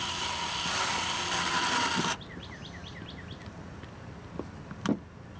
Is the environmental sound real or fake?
real